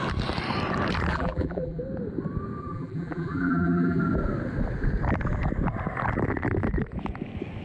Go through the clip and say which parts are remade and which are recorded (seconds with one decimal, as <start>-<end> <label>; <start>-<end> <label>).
0.0-1.1 recorded; 1.1-1.8 remade; 1.8-2.6 recorded; 2.6-4.0 remade; 4.0-7.6 recorded